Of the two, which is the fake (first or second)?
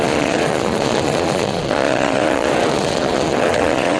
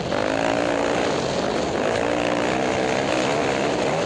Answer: first